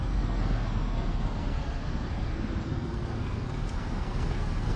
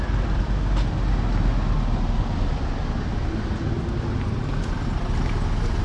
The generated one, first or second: first